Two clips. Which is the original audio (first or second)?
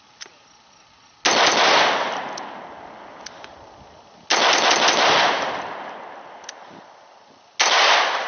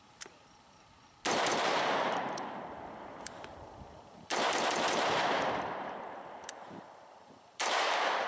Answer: first